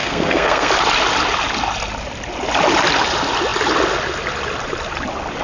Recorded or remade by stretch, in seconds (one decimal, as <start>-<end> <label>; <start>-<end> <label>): 0.0-0.7 remade; 0.7-5.4 recorded